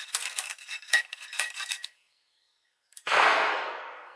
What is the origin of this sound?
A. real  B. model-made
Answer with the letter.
B